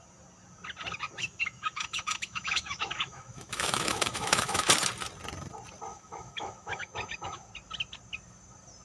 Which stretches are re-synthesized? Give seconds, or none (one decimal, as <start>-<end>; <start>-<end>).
1.2-4.7; 5.9-7.5